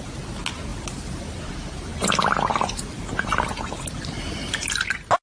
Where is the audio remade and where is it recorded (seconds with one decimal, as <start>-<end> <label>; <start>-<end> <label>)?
0.0-0.7 recorded; 0.7-1.5 remade; 1.5-5.2 recorded